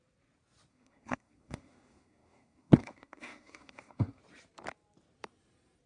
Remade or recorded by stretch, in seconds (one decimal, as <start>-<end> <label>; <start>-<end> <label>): 0.0-0.7 recorded; 0.7-4.2 remade; 4.2-5.9 recorded

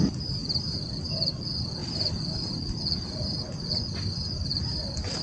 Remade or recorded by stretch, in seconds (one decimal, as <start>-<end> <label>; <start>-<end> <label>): 0.0-0.4 recorded; 0.4-1.1 remade; 1.1-5.2 recorded

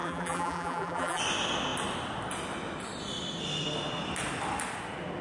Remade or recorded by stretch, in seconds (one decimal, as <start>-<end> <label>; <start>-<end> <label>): 0.0-1.2 remade; 1.2-5.2 recorded